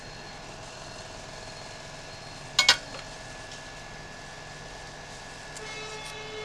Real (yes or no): yes